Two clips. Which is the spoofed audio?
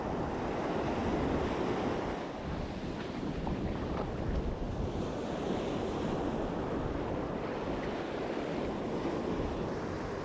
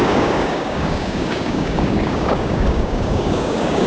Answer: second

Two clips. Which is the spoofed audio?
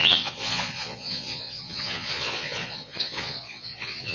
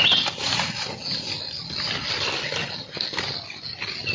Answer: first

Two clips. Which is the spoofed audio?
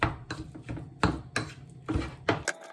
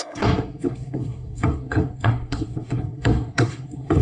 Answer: second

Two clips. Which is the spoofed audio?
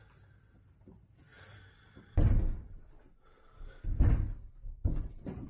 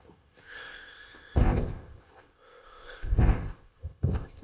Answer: second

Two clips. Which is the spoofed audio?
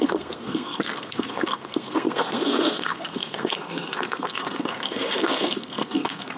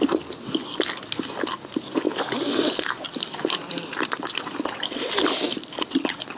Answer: first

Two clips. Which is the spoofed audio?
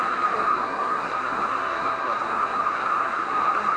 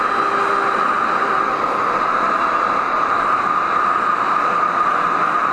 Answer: first